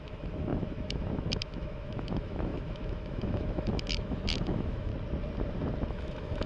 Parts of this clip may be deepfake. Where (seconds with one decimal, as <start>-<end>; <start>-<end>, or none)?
0.0-4.9; 5.9-6.5